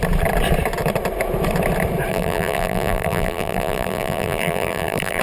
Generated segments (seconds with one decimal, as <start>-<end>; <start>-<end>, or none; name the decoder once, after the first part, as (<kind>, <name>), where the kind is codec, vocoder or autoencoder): 2.1-5.2 (vocoder, BigVGAN v2)